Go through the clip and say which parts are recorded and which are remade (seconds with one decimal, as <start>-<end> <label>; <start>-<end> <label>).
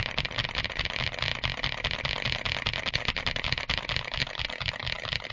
0.0-5.3 recorded